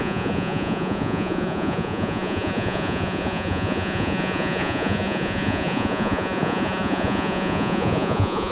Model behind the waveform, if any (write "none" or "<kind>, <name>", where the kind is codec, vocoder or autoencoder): vocoder, Vocos